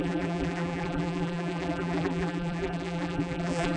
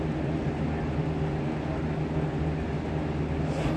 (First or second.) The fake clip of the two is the first